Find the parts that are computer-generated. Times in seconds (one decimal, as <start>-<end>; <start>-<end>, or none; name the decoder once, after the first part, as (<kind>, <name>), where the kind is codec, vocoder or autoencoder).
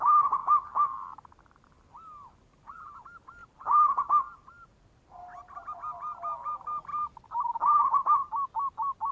0.4-2.4 (vocoder, BigVGAN v2); 3.4-5.4